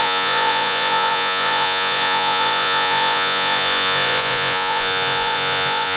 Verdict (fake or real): fake